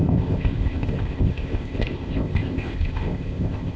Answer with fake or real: fake